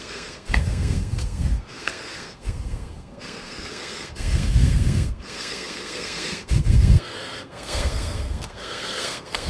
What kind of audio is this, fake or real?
fake